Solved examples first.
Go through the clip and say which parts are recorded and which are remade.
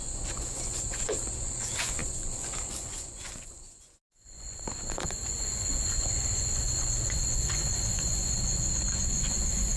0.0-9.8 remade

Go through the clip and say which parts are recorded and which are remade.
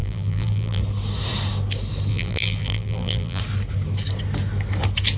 0.0-0.8 remade; 0.8-2.1 recorded; 2.1-3.4 remade; 3.4-5.2 recorded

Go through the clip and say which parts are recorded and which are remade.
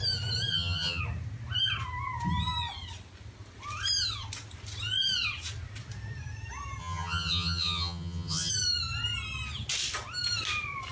0.0-0.5 recorded; 0.5-1.0 remade; 1.0-6.8 recorded; 6.8-8.5 remade; 8.5-10.9 recorded